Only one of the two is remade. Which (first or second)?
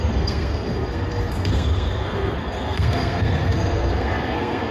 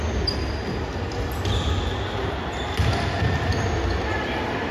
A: first